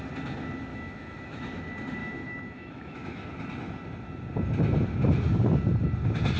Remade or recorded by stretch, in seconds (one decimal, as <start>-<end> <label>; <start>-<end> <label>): 0.0-0.7 recorded; 0.7-1.6 remade; 1.6-2.0 recorded; 2.0-3.3 remade; 3.3-6.4 recorded